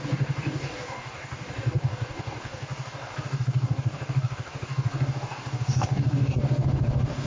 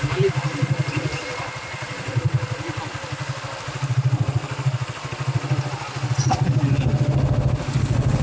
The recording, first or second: second